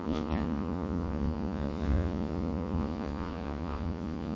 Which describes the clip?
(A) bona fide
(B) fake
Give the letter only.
B